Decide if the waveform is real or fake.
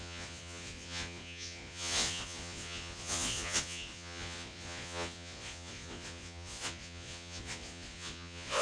fake